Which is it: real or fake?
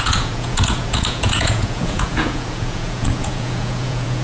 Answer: fake